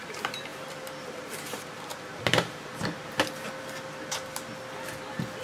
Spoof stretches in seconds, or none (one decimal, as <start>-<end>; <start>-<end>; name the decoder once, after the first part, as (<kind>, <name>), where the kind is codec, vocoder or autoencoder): 0.0-1.9 (vocoder, BigVGAN v2)